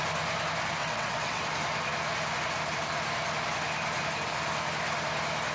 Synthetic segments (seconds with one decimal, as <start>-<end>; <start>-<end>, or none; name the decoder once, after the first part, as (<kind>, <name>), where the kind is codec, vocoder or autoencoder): 0.8-1.4 (vocoder, WaveNeXt)